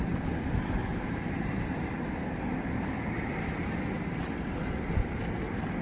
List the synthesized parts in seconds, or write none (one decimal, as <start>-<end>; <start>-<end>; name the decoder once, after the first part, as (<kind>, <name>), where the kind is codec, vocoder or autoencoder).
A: 0.8-3.8 (vocoder, BigVGAN v2)

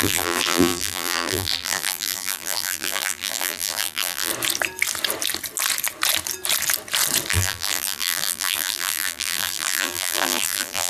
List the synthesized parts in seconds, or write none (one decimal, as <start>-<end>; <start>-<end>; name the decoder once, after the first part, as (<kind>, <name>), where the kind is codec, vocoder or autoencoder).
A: 0.0-4.3 (vocoder, BigVGAN v2); 7.3-10.9

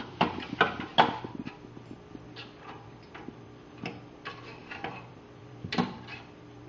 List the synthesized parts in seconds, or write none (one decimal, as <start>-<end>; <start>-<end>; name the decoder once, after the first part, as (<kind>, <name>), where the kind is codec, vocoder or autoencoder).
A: 0.0-0.9 (vocoder, BigVGAN v2); 2.1-6.7

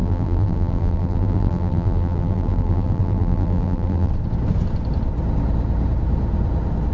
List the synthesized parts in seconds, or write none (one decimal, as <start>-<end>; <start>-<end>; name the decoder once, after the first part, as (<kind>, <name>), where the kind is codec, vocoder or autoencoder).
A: 0.0-4.1 (vocoder, BigVGAN v2)

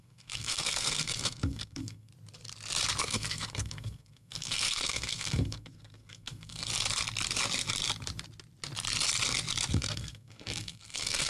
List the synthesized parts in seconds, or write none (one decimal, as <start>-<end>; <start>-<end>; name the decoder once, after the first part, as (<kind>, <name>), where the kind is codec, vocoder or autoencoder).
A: 0.0-2.1 (codec, SNAC); 3.0-6.7; 9.7-11.3